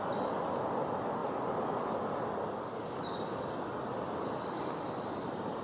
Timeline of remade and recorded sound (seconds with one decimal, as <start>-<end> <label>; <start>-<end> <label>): 0.0-5.6 recorded